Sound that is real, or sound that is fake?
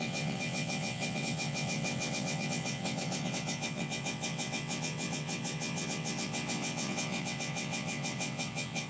fake